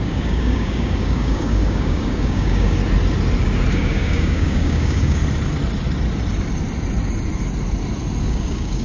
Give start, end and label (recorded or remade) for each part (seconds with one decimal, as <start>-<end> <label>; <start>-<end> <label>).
0.0-2.8 remade; 2.8-3.7 recorded; 3.7-5.2 remade; 5.2-8.2 recorded; 8.2-8.8 remade